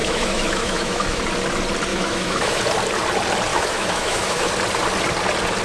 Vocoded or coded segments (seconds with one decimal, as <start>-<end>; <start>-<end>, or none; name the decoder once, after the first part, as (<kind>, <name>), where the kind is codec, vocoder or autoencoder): 0.0-1.2 (autoencoder, DAC-VAE); 1.9-2.6; 3.5-4.5